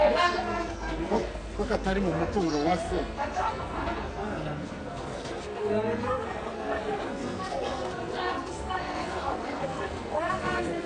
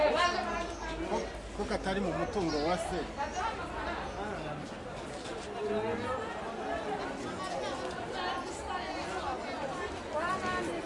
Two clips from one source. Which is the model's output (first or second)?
first